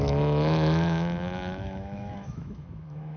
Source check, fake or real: fake